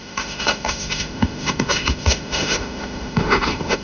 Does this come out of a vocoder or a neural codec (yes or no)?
yes